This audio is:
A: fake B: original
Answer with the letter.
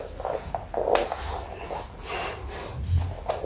B